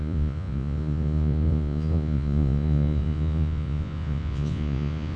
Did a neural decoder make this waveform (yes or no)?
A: yes